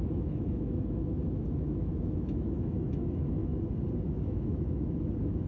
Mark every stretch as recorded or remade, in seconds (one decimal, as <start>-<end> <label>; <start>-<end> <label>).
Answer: 0.0-3.4 remade; 3.4-4.1 recorded; 4.1-5.5 remade